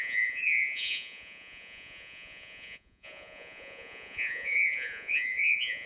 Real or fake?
fake